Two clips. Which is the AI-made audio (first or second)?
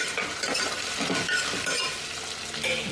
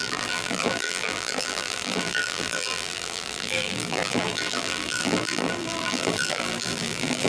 second